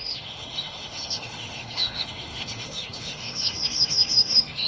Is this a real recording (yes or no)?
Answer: no